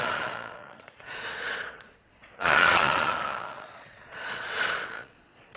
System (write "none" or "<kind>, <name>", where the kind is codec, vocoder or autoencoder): vocoder, Vocos